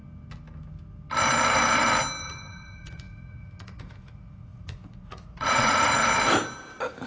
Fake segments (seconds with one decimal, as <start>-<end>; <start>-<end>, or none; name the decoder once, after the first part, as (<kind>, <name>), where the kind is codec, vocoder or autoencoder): 2.2-6.0 (vocoder, Vocos)